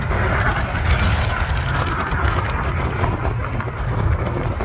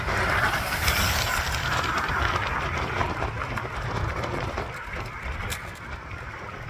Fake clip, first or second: second